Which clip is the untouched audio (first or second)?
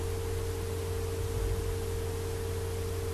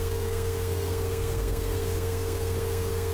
first